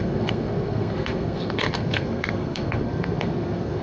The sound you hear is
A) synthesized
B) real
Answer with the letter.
A